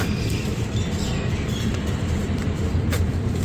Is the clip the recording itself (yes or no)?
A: no